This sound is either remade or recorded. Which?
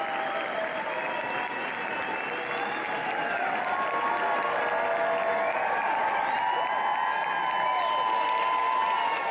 recorded